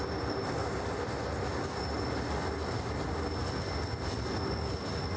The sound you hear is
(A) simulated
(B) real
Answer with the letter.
B